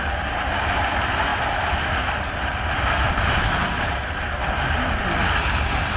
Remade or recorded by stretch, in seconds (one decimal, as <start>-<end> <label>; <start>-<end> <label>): 0.0-6.0 recorded